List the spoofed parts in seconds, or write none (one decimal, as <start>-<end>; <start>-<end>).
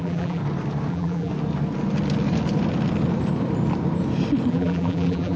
0.0-0.4; 0.9-1.3; 4.5-5.4